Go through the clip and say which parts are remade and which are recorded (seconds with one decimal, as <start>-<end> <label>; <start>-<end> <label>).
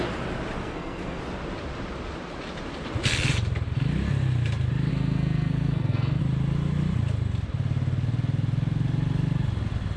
0.0-0.6 recorded; 0.6-1.2 remade; 1.2-4.9 recorded; 4.9-6.2 remade; 6.2-10.0 recorded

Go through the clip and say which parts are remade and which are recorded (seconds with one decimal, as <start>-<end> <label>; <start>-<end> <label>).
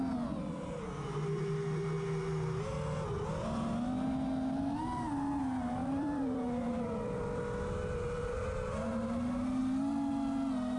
0.0-5.8 recorded; 5.8-7.4 remade; 7.4-10.8 recorded